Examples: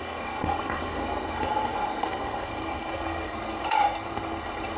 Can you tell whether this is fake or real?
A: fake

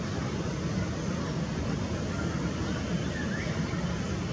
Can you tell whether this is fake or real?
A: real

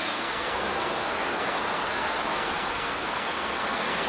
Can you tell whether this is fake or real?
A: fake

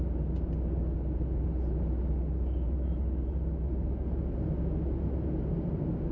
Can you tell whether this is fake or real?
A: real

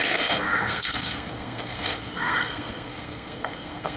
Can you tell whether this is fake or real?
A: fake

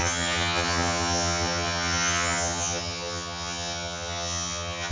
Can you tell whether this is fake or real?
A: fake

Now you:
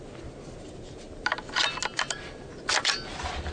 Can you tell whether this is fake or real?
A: real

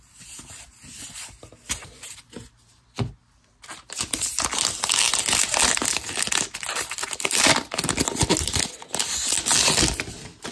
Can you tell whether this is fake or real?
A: real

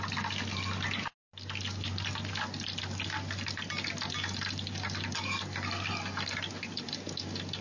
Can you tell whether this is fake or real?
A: real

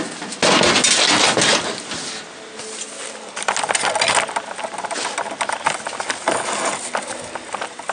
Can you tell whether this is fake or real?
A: real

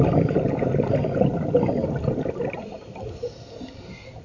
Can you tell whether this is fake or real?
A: real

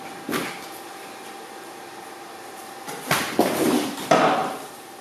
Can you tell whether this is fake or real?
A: fake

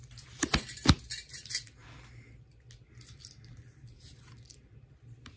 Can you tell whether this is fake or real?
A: real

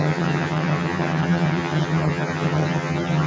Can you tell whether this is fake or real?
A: fake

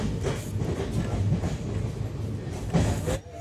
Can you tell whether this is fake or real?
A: real